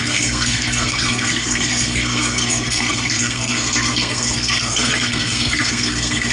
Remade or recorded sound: remade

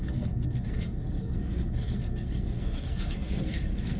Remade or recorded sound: remade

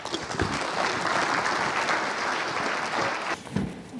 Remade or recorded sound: recorded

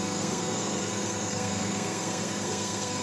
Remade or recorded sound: remade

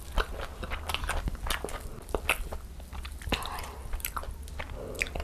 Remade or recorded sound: recorded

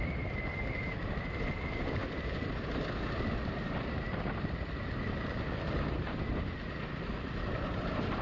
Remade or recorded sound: recorded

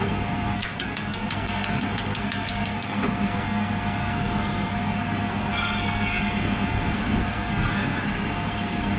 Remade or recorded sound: remade